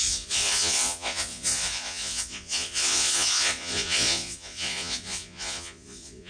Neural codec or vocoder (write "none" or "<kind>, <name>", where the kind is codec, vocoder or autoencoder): vocoder, Vocos